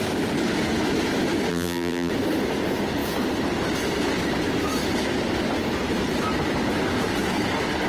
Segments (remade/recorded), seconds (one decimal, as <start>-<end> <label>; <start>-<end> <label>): 0.0-1.5 recorded; 1.5-2.1 remade; 2.1-7.9 recorded